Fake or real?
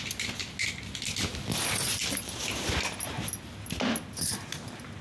real